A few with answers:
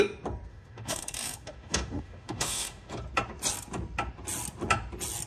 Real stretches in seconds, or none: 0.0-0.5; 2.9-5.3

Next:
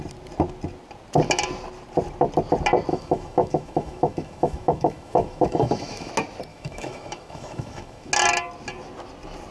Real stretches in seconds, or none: 0.0-2.9; 6.1-6.5; 8.1-9.5

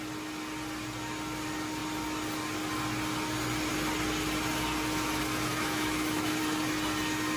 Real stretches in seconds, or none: 0.0-5.5; 6.4-7.4

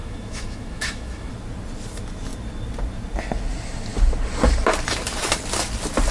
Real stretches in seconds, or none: 1.3-6.1

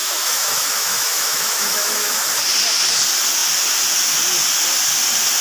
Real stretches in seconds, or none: 2.2-5.4